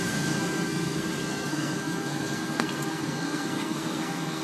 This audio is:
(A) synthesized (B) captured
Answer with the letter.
A